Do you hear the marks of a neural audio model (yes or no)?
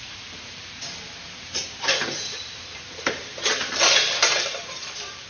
yes